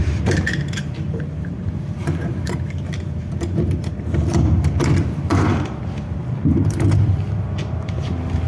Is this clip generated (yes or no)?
yes